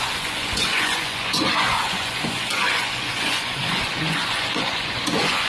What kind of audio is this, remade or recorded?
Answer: remade